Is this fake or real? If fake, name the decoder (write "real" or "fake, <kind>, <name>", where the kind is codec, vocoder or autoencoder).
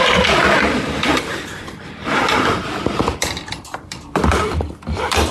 fake, vocoder, BigVGAN v2